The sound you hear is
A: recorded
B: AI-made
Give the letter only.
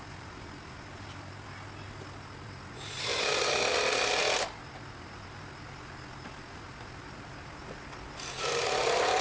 A